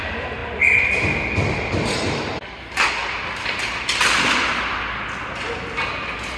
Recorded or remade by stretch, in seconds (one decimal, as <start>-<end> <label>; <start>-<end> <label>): 0.0-6.4 recorded